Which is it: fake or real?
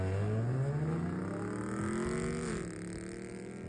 real